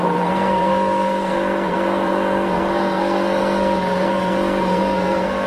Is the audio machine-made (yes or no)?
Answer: yes